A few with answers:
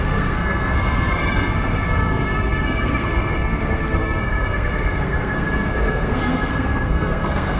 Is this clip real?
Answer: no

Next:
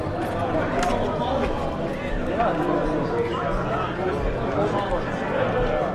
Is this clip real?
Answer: yes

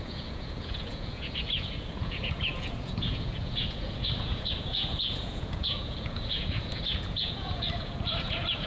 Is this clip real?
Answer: no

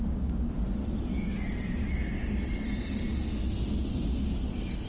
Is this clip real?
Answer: yes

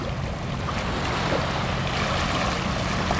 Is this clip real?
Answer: yes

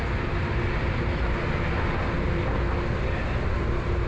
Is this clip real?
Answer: yes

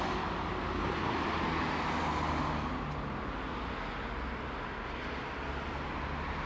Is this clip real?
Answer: yes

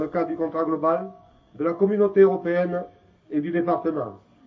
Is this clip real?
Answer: no